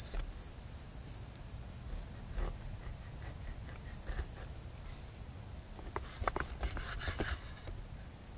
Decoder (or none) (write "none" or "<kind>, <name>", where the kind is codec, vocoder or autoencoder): none